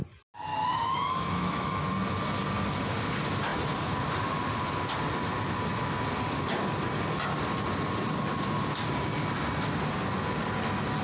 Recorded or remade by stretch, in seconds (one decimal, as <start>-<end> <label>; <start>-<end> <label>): 0.0-0.5 recorded; 0.5-1.9 remade; 1.9-11.0 recorded

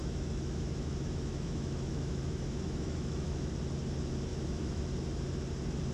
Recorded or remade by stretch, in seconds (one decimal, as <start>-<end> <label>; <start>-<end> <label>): 0.0-3.5 remade; 3.5-4.3 recorded; 4.3-4.8 remade; 4.8-5.9 recorded